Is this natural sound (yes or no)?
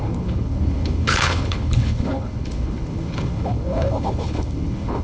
no